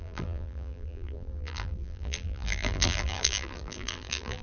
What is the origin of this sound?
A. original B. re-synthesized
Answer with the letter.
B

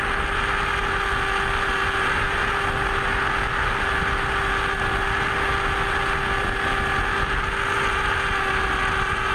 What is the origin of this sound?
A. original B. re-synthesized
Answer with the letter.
A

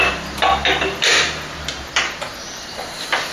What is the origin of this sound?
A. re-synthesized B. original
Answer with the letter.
B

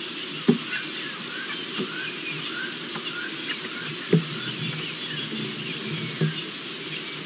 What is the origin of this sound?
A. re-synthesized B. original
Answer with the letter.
B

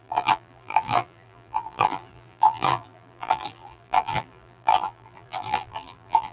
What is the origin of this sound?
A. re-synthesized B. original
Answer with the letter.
A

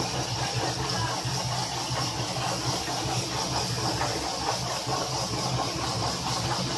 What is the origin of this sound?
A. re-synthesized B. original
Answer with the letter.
B